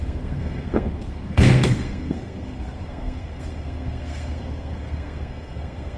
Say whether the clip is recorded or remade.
remade